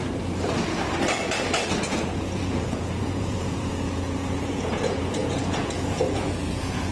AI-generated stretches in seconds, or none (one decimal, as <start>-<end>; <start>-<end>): 1.9-6.9